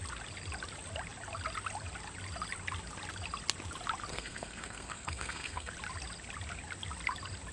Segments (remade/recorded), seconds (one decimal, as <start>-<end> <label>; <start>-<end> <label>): 0.0-4.1 recorded; 4.1-5.7 remade; 5.7-7.5 recorded